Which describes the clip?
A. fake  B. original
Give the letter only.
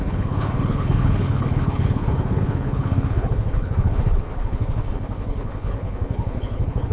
A